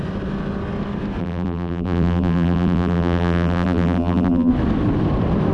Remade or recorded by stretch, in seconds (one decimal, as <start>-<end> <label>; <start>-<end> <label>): 0.0-1.2 recorded; 1.2-4.5 remade; 4.5-5.5 recorded